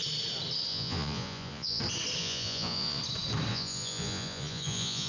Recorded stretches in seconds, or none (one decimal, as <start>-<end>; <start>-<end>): 0.0-0.7; 1.8-2.2; 3.0-3.5